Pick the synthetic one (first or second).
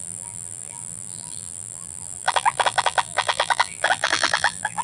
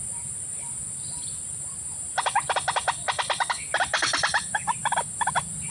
first